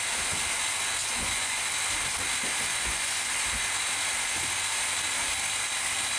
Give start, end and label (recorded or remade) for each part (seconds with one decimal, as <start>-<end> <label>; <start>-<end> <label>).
0.0-1.0 recorded; 1.0-1.6 remade; 1.6-2.7 recorded; 2.7-3.3 remade; 3.3-6.2 recorded